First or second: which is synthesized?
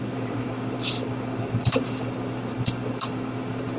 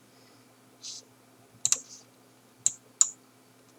first